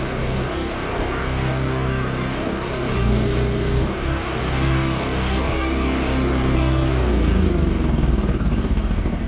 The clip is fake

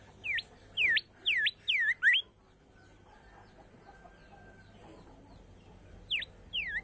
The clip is real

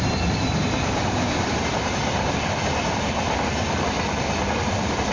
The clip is real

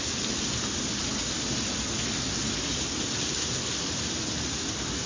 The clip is real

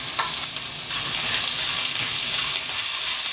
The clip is real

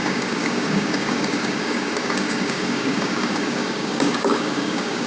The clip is fake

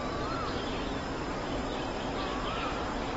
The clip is real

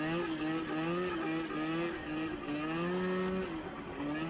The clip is real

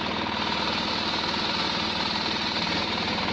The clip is real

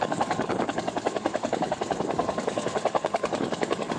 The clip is fake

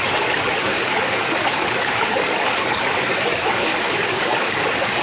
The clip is fake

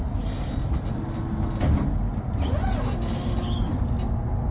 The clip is real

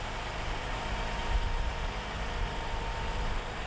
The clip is real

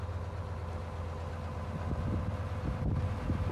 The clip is real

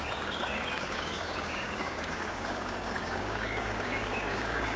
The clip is fake